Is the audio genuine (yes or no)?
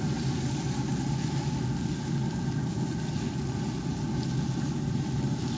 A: yes